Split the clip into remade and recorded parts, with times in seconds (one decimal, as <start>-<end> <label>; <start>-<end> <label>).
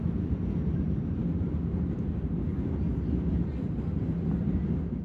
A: 0.0-5.0 recorded